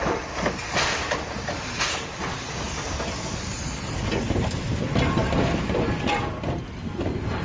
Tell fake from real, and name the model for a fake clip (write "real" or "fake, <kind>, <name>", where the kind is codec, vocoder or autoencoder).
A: real